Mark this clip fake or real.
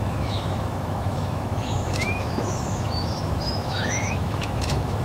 fake